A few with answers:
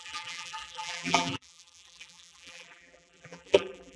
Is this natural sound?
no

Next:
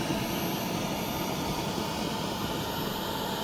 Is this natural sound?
yes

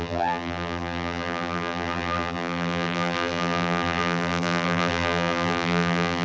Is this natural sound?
no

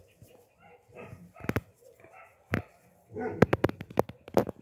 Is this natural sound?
yes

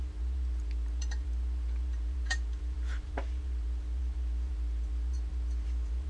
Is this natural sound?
no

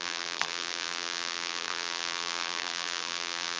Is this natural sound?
no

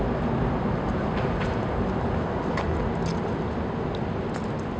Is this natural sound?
yes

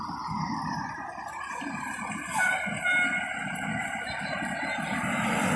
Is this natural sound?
no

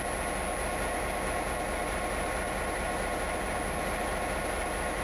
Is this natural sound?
yes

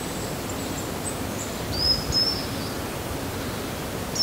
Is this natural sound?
no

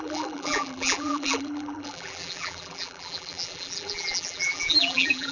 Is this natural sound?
no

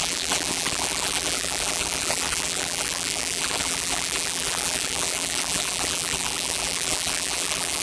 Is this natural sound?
no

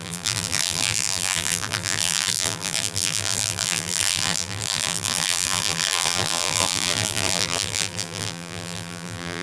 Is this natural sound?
no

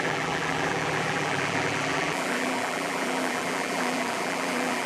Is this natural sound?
no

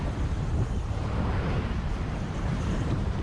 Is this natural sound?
no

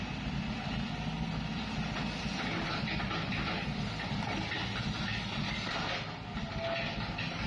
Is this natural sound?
yes